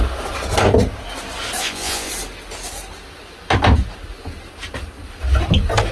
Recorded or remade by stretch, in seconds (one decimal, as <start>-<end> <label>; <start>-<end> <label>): 0.0-1.6 recorded; 1.6-2.1 remade; 2.1-5.9 recorded